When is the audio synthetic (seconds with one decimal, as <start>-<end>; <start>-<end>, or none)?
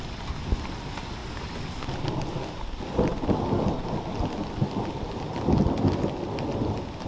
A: none